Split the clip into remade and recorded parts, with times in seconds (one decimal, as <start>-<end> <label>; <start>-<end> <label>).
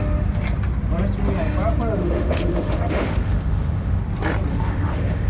0.0-2.0 recorded; 2.0-4.0 remade; 4.0-4.5 recorded; 4.5-5.3 remade